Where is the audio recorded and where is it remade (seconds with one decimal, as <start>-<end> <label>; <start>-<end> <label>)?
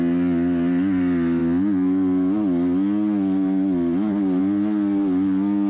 0.0-5.7 recorded